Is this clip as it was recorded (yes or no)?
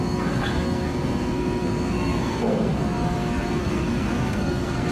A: no